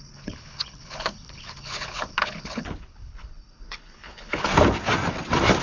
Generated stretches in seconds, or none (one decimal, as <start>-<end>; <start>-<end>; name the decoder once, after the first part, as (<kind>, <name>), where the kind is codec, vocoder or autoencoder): 0.0-4.5 (codec, HILCodec)